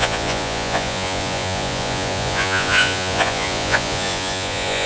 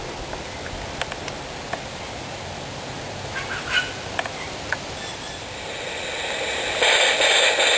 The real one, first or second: second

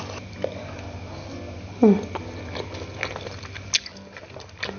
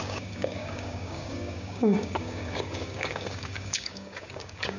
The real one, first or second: first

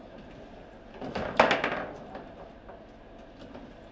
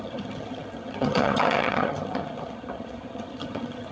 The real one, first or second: first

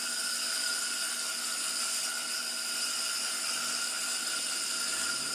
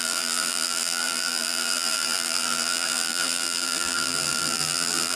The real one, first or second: first